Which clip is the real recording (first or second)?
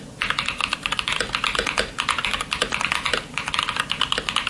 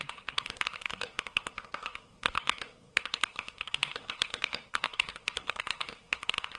first